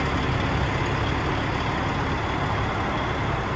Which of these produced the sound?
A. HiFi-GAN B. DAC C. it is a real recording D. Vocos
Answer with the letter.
C